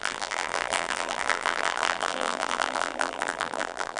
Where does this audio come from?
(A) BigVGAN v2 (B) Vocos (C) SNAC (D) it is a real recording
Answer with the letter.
A